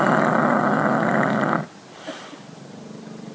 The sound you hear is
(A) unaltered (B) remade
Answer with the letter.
A